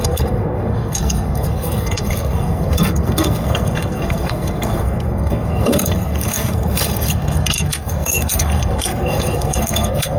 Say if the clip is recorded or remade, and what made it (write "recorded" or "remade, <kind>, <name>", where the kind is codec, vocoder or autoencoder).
remade, codec, SNAC